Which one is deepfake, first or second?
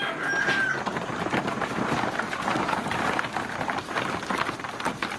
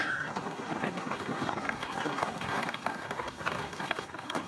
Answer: second